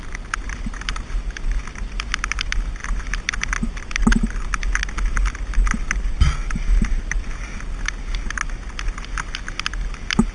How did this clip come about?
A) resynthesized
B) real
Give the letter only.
B